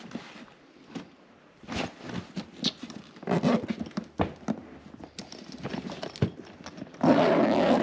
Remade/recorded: recorded